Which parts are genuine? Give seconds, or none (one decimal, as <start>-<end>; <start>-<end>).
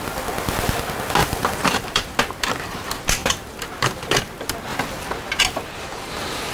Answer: 0.0-1.2; 2.2-3.2; 4.2-6.5